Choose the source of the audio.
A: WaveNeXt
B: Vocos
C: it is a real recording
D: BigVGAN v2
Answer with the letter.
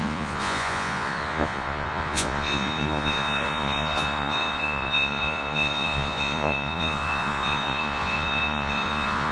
B